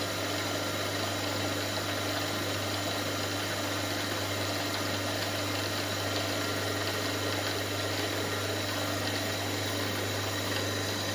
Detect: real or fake real